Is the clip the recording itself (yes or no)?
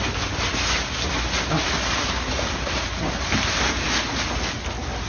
yes